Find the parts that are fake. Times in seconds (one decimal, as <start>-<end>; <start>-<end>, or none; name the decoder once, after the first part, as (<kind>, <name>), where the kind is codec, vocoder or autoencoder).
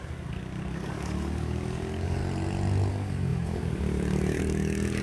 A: 0.0-2.2 (codec, DAC); 2.9-5.0